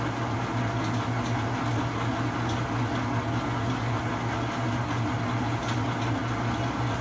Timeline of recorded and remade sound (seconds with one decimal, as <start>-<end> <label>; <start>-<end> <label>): 0.0-7.0 recorded